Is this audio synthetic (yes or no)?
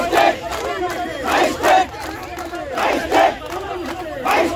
no